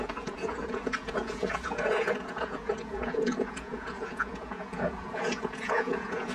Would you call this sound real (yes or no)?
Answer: no